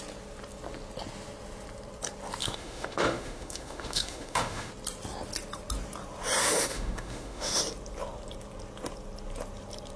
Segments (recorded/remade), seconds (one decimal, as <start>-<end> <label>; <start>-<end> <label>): 0.0-2.4 recorded; 2.4-4.7 remade; 4.7-6.4 recorded; 6.4-7.6 remade; 7.6-10.0 recorded

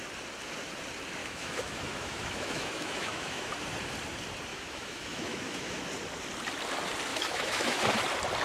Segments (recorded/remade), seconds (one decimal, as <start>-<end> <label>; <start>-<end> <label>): 0.0-1.2 recorded; 1.2-3.5 remade; 3.5-4.5 recorded; 4.5-5.8 remade; 5.8-7.1 recorded; 7.1-7.8 remade; 7.8-8.4 recorded

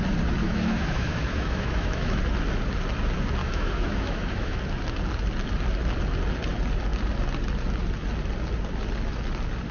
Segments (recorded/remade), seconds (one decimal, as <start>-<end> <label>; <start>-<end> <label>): 0.0-0.4 recorded; 0.4-2.2 remade; 2.2-3.4 recorded; 3.4-4.6 remade; 4.6-9.7 recorded